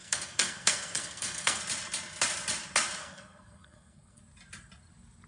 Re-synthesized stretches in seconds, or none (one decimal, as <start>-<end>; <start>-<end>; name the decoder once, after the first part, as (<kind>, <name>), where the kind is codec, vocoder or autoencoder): 0.0-1.6 (codec, SNAC); 3.0-4.2